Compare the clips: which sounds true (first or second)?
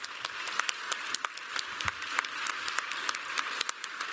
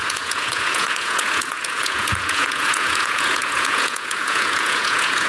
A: first